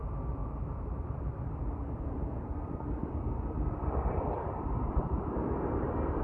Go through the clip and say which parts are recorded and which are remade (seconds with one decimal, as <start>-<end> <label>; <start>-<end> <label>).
0.0-6.2 recorded